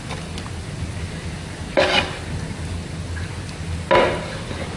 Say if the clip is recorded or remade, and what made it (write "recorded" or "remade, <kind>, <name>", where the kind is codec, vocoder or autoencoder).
recorded